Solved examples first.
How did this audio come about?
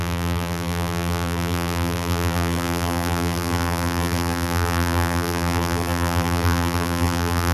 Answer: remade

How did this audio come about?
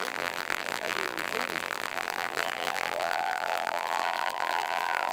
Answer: remade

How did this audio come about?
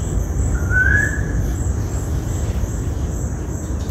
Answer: recorded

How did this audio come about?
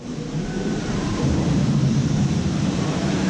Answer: remade